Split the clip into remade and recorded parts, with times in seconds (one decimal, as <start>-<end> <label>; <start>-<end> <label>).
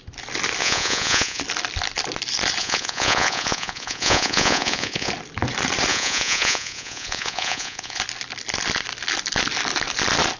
0.0-0.6 recorded; 0.6-1.4 remade; 1.4-2.6 recorded; 2.6-5.1 remade; 5.1-5.9 recorded; 5.9-8.0 remade; 8.0-10.4 recorded